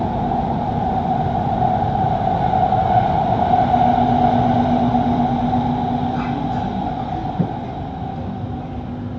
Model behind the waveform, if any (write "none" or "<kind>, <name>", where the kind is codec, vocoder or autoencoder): none